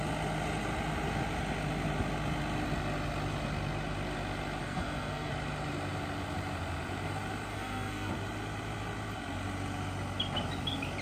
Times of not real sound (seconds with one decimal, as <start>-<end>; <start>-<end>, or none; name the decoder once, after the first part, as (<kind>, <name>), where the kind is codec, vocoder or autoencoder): 4.6-5.3 (codec, SNAC); 7.5-8.1